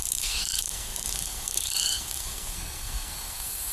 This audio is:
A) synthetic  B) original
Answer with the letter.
A